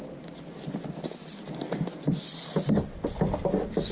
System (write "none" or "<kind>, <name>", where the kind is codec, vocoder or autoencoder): none